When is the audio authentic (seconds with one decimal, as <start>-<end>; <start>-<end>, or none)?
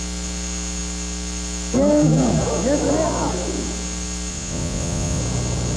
0.0-4.3; 5.2-5.8